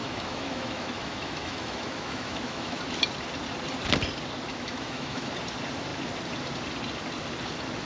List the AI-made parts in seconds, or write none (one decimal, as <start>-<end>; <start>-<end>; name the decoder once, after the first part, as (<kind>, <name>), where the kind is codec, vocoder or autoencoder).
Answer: 0.0-2.8 (autoencoder, DAC-VAE); 4.5-5.3